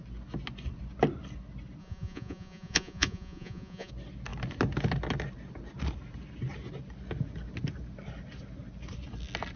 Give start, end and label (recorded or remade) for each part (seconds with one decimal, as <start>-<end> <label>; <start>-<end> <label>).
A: 0.0-1.8 recorded; 1.8-3.9 remade; 3.9-9.6 recorded